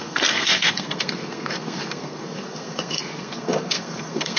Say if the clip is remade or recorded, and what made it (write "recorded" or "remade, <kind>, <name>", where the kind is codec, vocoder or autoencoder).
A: remade, codec, SNAC